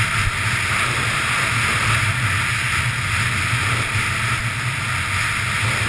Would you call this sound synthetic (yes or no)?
no